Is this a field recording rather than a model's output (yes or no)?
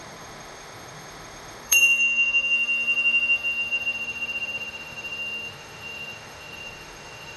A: no